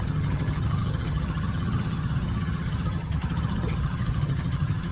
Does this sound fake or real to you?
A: fake